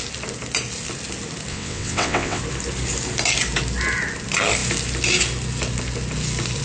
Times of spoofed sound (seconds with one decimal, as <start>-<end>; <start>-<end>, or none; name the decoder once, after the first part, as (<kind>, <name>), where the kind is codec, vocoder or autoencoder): 1.5-2.4 (vocoder, WaveNeXt)